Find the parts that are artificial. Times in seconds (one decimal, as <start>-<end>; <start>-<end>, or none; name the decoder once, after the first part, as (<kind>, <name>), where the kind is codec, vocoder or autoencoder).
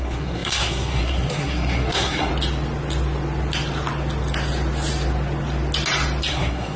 0.0-2.3 (codec, SNAC); 6.3-6.8